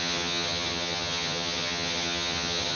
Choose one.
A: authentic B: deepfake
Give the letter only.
B